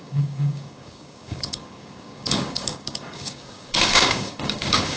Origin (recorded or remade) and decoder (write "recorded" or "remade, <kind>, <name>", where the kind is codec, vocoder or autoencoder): remade, codec, DAC